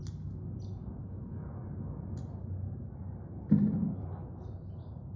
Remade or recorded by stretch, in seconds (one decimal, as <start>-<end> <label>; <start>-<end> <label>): 0.0-1.0 recorded; 1.0-1.6 remade; 1.6-3.8 recorded; 3.8-4.3 remade; 4.3-5.2 recorded